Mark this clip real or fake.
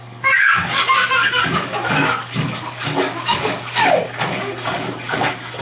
fake